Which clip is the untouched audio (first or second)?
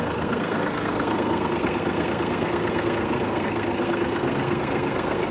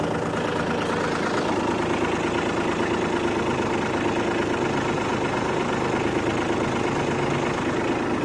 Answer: second